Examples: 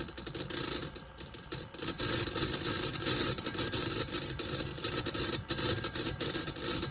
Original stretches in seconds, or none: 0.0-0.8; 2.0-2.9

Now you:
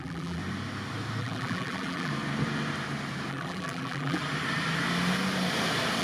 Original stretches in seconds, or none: 0.4-1.2; 2.1-3.3; 4.2-6.0